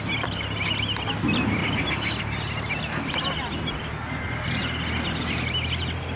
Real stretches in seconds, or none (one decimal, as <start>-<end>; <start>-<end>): 0.0-6.2